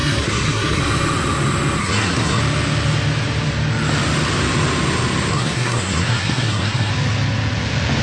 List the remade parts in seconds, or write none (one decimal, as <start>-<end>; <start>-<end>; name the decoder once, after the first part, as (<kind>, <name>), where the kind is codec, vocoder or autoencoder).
0.0-0.8 (codec, SNAC); 1.8-2.4; 5.3-6.9